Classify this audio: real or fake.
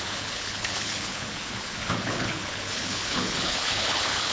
fake